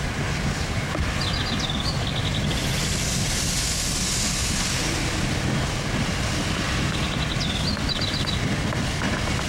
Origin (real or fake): real